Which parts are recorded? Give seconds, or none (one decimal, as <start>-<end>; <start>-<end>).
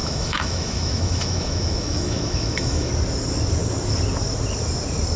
2.9-5.2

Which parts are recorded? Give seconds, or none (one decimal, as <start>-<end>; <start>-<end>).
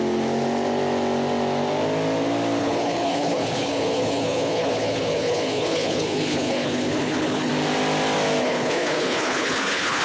0.0-2.6; 7.5-8.4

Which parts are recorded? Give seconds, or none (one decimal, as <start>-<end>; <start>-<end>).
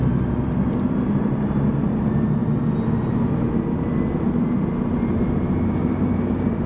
0.0-6.7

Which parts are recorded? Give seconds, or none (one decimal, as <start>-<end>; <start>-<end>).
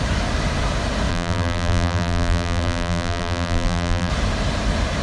0.0-1.1; 4.1-5.0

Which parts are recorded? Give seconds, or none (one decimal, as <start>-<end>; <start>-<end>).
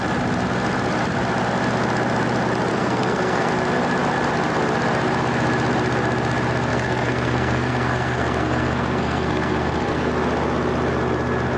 0.0-2.7; 3.5-6.7; 10.1-11.6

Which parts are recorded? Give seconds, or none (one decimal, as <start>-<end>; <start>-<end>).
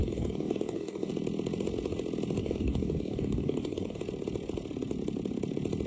1.1-2.4; 4.0-5.9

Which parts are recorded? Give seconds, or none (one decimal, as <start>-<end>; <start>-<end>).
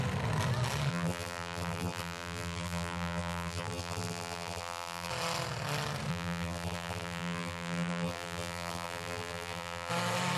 0.0-0.9; 5.1-6.1; 9.9-10.4